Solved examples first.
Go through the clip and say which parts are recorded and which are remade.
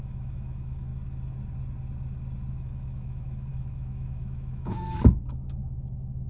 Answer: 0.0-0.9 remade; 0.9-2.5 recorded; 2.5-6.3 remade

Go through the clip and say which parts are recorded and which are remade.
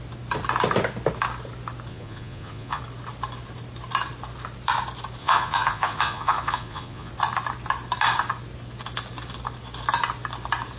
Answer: 0.0-1.9 recorded; 1.9-2.8 remade; 2.8-5.2 recorded; 5.2-7.1 remade; 7.1-10.8 recorded